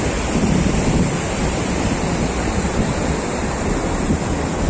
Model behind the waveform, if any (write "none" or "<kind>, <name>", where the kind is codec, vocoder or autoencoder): vocoder, BigVGAN v2